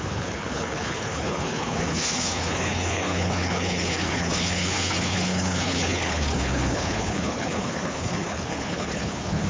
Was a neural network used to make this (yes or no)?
yes